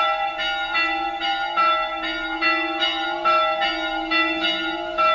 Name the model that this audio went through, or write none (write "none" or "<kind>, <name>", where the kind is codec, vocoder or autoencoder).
none